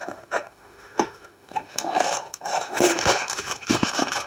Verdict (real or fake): fake